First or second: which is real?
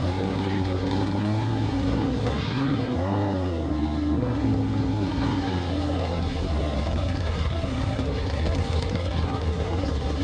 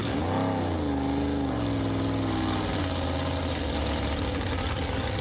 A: second